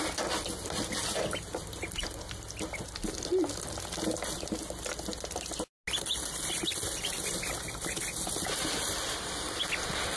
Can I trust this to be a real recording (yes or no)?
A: yes